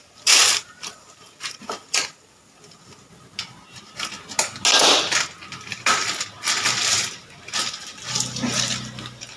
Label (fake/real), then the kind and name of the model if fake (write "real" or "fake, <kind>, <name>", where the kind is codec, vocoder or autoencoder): real